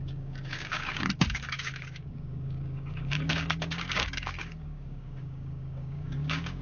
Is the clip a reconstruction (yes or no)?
yes